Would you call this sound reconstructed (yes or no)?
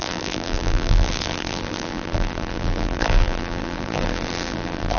yes